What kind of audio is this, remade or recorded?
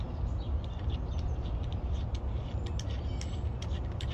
recorded